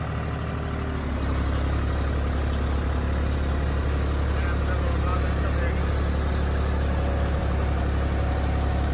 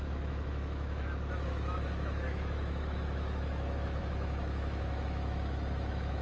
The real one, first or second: first